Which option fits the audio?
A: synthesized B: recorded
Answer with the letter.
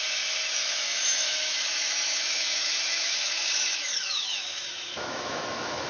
A